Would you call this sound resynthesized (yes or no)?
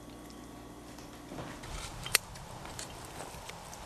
yes